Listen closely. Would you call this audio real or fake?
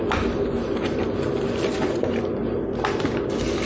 real